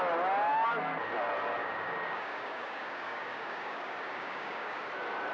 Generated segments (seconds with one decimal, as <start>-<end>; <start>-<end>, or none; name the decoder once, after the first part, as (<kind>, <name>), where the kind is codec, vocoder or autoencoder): 1.6-4.8 (codec, DAC)